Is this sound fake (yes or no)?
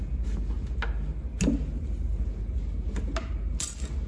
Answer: no